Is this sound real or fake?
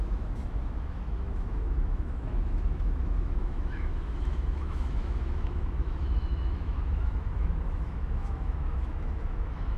fake